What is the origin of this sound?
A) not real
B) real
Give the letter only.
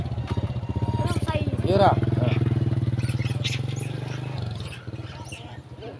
B